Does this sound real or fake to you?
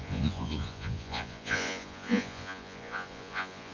fake